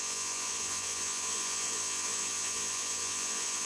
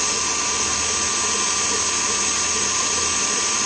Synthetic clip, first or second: first